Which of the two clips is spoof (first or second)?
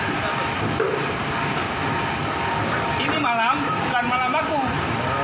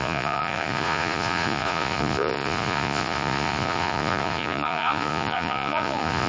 second